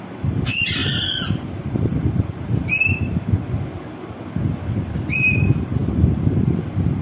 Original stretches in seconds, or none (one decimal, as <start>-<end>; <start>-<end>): none